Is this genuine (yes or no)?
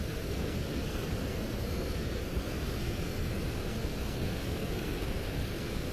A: no